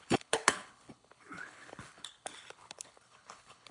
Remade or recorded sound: remade